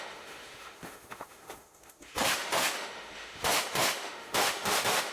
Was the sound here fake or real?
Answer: fake